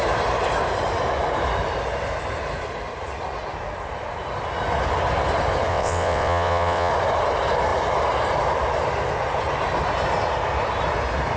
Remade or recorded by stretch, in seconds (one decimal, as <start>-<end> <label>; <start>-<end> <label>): 0.0-5.7 recorded; 5.7-6.9 remade; 6.9-11.4 recorded